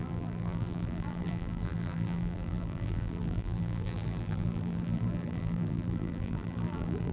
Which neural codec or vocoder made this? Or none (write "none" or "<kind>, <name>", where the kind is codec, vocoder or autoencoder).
vocoder, BigVGAN v2